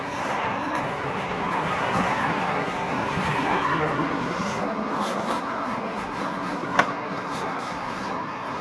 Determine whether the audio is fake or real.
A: fake